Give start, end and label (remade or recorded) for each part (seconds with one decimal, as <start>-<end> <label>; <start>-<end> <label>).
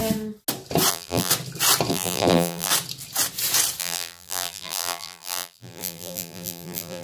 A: 0.0-0.9 recorded; 0.9-1.3 remade; 1.3-1.9 recorded; 1.9-2.7 remade; 2.7-3.8 recorded; 3.8-7.0 remade